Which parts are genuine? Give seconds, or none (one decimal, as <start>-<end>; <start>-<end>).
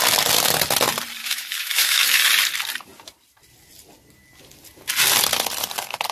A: 0.0-1.2; 2.2-6.1